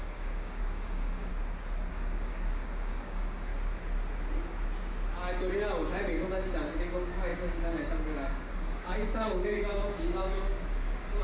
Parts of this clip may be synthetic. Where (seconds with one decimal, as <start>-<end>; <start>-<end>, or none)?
0.0-1.3; 1.9-3.5; 6.8-11.2